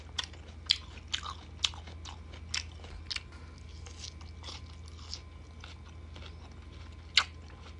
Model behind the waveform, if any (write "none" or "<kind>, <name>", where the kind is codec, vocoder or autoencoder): none